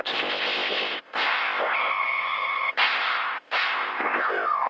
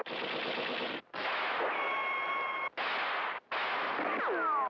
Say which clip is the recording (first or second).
second